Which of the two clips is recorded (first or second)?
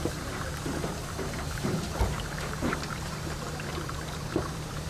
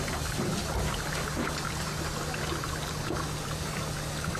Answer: second